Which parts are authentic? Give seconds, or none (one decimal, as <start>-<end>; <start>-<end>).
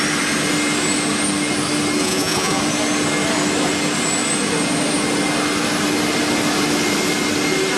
0.0-2.0; 2.6-7.8